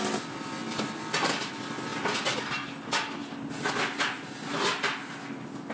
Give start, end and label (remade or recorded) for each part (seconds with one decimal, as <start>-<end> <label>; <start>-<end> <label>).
0.0-5.7 recorded